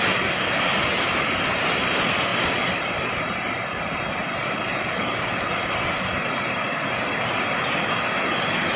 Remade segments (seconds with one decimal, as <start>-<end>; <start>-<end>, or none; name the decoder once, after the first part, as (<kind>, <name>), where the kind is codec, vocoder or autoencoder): none